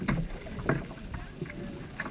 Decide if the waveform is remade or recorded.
recorded